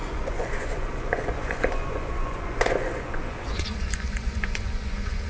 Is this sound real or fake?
fake